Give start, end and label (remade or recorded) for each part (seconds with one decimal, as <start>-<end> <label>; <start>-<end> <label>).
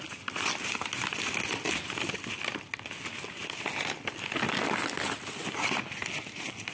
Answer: 0.0-6.7 recorded